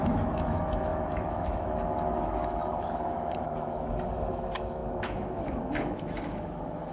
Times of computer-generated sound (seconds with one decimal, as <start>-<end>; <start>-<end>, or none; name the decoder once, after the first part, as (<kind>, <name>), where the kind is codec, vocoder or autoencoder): 0.0-6.9 (autoencoder, DAC-VAE)